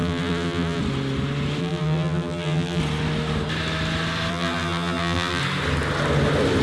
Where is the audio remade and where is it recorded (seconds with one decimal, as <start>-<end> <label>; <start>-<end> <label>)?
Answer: 0.0-0.8 remade; 0.8-1.6 recorded; 1.6-2.8 remade; 2.8-4.3 recorded; 4.3-5.4 remade; 5.4-6.6 recorded

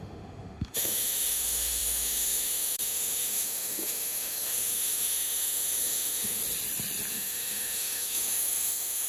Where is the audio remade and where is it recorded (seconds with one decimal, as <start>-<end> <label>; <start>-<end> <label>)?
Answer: 0.0-6.4 remade; 6.4-7.1 recorded; 7.1-9.1 remade

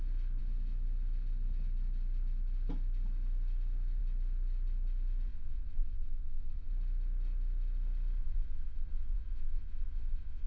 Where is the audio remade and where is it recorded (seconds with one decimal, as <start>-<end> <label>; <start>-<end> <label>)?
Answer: 0.0-5.3 recorded; 5.3-6.7 remade; 6.7-8.2 recorded; 8.2-10.5 remade

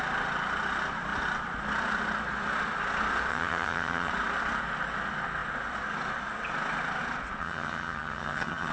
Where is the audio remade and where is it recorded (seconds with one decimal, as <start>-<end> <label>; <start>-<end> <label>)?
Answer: 0.0-3.3 recorded; 3.3-4.1 remade; 4.1-7.4 recorded; 7.4-8.7 remade

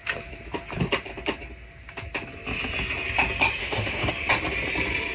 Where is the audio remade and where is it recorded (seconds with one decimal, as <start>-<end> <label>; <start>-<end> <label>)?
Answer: 0.0-3.6 recorded; 3.6-4.1 remade; 4.1-5.1 recorded

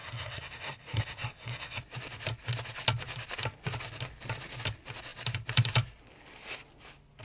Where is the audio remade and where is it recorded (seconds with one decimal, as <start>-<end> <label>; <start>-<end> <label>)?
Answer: 0.0-1.8 remade; 1.8-7.2 recorded